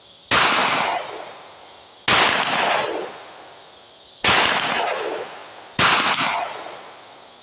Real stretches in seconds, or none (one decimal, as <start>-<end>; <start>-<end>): 0.0-7.4